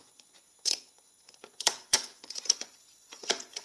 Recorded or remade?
remade